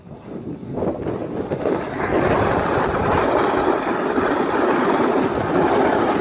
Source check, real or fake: real